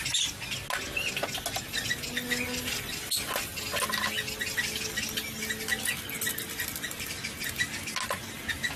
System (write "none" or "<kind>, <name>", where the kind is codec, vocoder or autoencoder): none